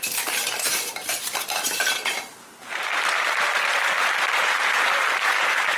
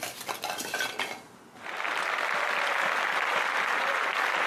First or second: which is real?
second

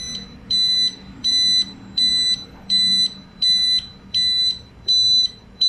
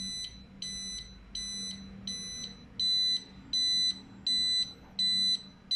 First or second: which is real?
second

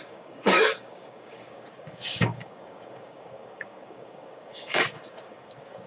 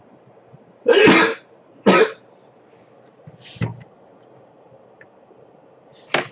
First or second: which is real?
second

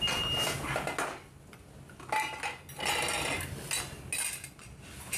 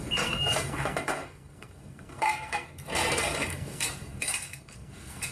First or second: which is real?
first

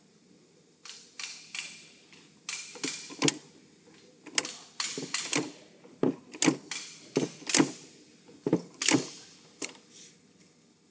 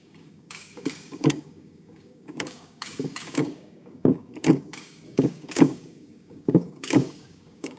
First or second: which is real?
first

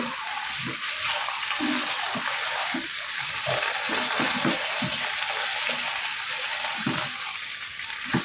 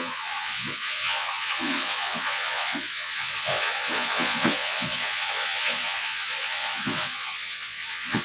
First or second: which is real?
first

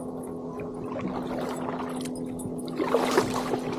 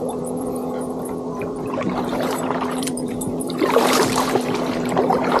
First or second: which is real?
first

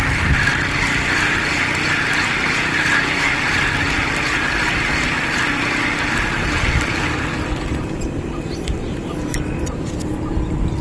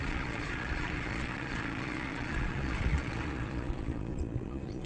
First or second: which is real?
first